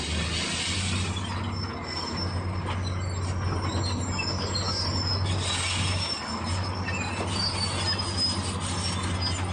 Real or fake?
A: real